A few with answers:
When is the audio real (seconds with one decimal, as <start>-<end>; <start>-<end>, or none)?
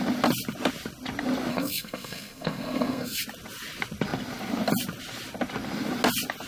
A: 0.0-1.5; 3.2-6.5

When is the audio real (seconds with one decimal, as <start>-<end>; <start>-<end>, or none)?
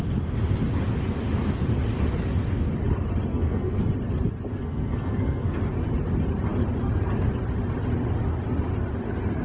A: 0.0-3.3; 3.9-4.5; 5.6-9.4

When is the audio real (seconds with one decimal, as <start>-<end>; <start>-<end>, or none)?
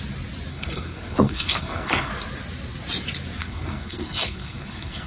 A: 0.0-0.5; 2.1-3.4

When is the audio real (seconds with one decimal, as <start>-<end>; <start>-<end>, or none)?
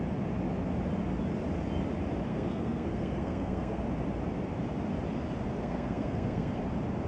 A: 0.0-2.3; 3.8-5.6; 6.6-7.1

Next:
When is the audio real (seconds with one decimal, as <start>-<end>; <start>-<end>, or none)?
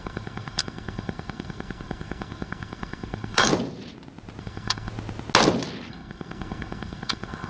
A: 3.5-4.4; 4.9-5.9